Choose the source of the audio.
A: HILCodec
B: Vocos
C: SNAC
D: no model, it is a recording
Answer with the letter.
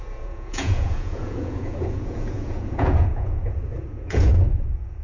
B